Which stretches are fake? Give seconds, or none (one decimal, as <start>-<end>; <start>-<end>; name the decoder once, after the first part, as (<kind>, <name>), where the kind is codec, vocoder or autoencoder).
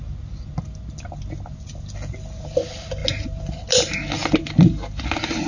none